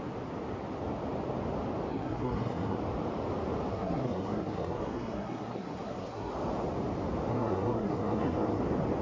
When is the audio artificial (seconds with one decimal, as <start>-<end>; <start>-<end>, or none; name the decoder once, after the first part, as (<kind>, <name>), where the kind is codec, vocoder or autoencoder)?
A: 1.9-2.8 (codec, SNAC); 3.7-6.3; 7.3-8.6